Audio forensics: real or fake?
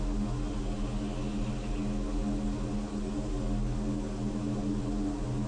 real